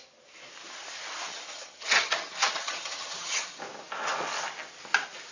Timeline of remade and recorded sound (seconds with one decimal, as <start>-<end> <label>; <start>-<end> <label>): 0.0-1.3 recorded; 1.3-3.6 remade; 3.6-5.3 recorded